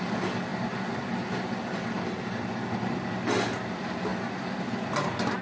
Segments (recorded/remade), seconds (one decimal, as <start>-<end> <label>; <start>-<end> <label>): 0.0-5.4 recorded